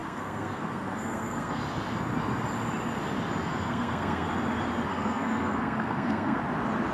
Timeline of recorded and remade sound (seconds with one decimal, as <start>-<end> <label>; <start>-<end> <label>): 0.0-1.6 remade; 1.6-3.5 recorded; 3.5-4.3 remade; 4.3-4.9 recorded; 4.9-6.4 remade; 6.4-6.9 recorded